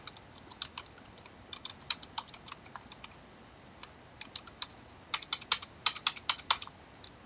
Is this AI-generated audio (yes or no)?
no